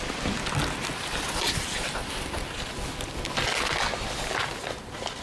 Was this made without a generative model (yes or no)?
yes